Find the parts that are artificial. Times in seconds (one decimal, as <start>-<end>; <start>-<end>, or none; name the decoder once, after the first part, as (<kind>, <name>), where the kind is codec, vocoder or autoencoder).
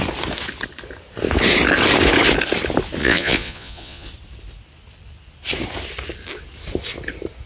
3.0-4.1 (vocoder, Vocos)